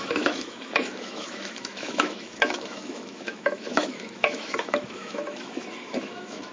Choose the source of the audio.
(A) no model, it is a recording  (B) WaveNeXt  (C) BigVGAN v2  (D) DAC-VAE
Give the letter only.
D